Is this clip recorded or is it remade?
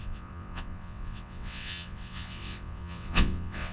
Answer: remade